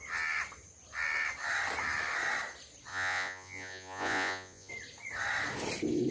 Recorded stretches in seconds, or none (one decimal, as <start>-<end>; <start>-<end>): 0.0-2.9; 4.7-6.1